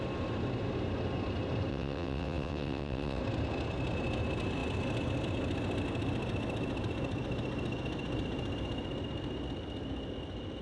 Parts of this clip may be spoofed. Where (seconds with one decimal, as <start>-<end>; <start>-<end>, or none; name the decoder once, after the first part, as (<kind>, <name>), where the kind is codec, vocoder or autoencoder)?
1.7-3.2 (vocoder, WaveNeXt)